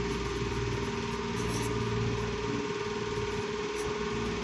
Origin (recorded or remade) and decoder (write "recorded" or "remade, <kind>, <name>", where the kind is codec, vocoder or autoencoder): recorded